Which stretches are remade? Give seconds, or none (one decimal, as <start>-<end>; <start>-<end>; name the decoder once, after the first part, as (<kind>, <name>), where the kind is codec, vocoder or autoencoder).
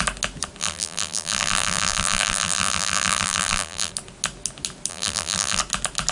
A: 0.6-3.9 (vocoder, BigVGAN v2); 4.9-5.6